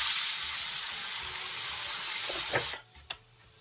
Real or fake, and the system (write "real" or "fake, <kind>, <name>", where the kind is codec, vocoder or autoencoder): real